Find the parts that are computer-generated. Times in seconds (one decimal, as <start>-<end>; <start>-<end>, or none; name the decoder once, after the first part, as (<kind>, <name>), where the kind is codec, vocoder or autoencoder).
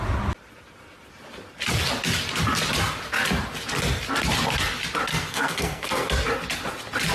5.1-6.1 (codec, SNAC)